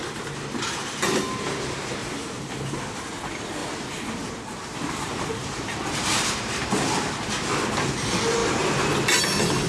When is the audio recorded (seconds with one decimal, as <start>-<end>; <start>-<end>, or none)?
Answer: 0.0-2.0; 3.1-3.6; 6.7-9.7